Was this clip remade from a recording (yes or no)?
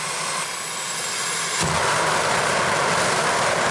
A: no